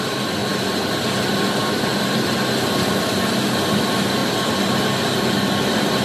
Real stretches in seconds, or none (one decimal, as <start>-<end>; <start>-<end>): 0.0-6.0